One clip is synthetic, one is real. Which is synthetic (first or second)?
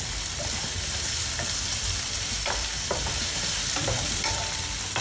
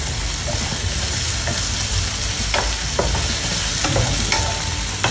first